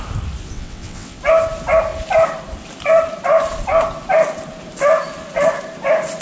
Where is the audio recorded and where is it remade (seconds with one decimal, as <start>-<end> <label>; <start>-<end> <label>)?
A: 0.0-0.5 recorded; 0.5-1.2 remade; 1.2-6.2 recorded